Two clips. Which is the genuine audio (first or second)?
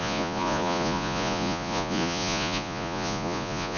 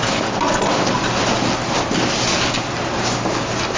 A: second